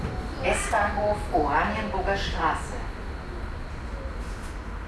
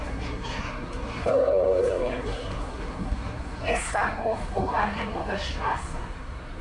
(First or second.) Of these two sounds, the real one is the first